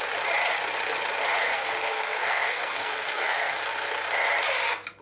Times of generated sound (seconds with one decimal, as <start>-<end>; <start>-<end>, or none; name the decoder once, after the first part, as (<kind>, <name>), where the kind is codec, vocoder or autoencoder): 1.4-3.6 (codec, SNAC)

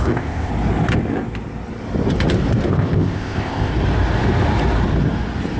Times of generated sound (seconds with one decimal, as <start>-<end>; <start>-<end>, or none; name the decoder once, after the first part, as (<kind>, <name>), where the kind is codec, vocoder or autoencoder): 0.0-0.5 (codec, ZipCodec); 2.7-3.7